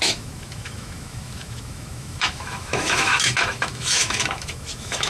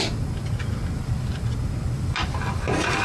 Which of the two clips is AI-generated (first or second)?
first